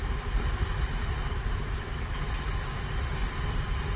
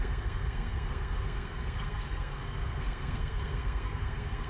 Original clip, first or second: first